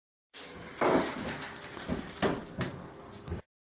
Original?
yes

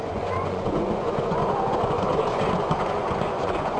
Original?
no